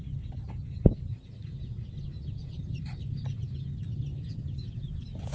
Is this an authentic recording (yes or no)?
yes